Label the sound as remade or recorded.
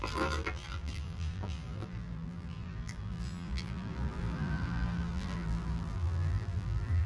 remade